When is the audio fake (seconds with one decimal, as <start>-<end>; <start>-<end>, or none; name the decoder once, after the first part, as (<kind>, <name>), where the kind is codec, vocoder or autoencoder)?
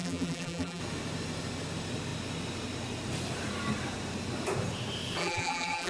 0.0-0.8 (vocoder, BigVGAN v2); 5.2-5.9